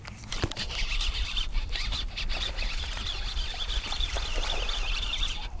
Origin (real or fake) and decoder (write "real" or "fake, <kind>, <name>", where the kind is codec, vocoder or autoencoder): real